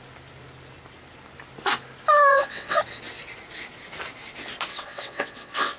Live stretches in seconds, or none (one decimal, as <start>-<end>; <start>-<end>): 0.0-2.3; 2.8-4.7